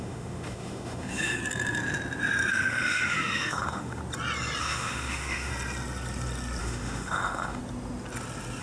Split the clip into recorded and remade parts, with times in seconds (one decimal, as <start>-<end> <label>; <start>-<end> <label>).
0.0-1.4 remade; 1.4-2.5 recorded; 2.5-4.0 remade; 4.0-4.6 recorded; 4.6-5.5 remade; 5.5-6.6 recorded; 6.6-7.6 remade; 7.6-8.6 recorded

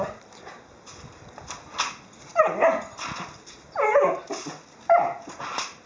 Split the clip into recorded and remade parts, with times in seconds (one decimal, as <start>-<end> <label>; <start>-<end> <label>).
0.0-5.9 recorded

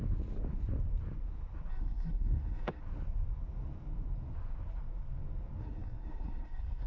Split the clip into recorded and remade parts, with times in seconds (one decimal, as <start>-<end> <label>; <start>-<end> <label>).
0.0-1.7 recorded; 1.7-2.8 remade; 2.8-5.6 recorded; 5.6-6.9 remade

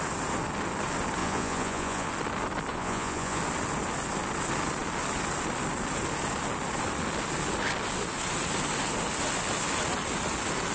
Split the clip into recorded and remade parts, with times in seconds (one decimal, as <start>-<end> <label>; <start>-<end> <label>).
0.0-1.2 recorded; 1.2-2.1 remade; 2.1-2.7 recorded; 2.7-3.4 remade; 3.4-10.7 recorded